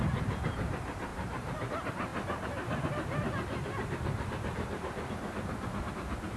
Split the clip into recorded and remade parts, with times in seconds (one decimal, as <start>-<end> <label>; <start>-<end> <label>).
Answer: 0.0-1.1 recorded; 1.1-1.7 remade; 1.7-2.1 recorded; 2.1-5.9 remade; 5.9-6.4 recorded